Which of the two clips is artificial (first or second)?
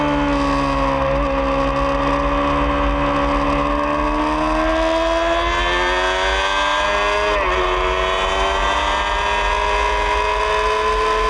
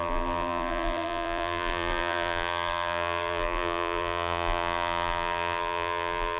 second